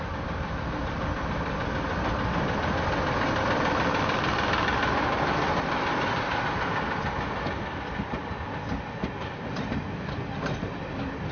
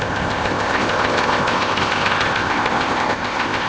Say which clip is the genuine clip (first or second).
first